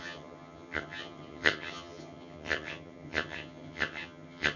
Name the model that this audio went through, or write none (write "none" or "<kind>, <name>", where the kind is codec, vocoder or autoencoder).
vocoder, HiFi-GAN